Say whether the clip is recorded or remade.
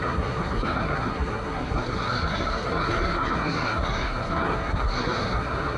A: remade